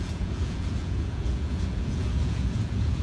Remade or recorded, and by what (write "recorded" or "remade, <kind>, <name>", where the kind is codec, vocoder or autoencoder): remade, vocoder, Vocos